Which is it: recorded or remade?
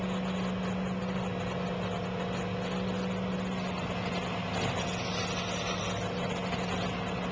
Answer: recorded